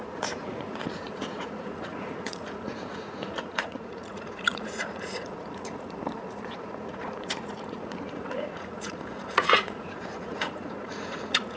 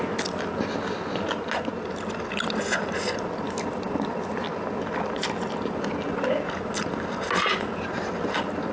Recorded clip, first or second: second